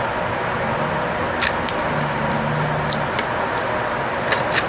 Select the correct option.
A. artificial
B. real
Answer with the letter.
B